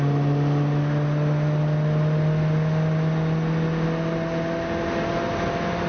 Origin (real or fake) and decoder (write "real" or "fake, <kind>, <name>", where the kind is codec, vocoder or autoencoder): real